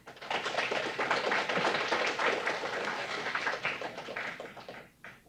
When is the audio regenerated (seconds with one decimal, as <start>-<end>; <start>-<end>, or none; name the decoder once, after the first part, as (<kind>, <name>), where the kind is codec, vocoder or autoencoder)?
2.8-3.4 (codec, DAC)